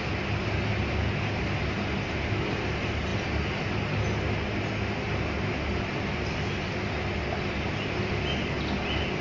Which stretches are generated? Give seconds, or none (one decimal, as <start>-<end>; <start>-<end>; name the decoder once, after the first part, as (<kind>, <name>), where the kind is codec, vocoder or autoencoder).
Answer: none